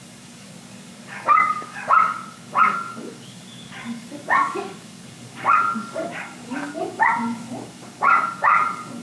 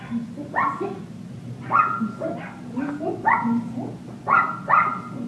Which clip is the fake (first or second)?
first